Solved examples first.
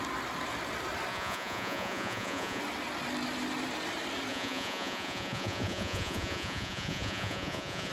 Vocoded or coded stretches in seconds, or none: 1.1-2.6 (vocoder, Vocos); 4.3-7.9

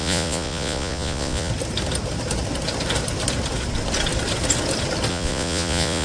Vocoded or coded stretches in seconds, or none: 0.0-1.5 (vocoder, Vocos); 5.1-6.0

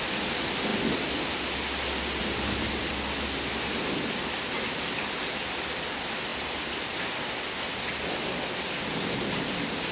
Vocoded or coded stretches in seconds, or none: none

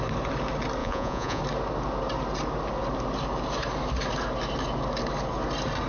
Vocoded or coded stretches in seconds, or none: 0.8-1.4 (vocoder, Vocos)